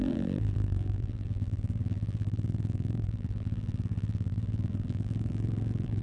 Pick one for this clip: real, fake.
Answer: fake